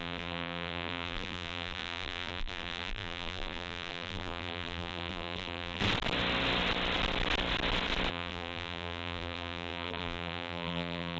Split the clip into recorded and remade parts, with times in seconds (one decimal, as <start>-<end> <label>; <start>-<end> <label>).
0.0-5.8 remade; 5.8-8.1 recorded; 8.1-11.2 remade